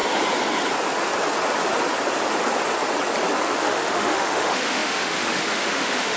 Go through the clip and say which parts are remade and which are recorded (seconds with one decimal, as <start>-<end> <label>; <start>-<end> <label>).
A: 0.0-3.4 recorded; 3.4-6.2 remade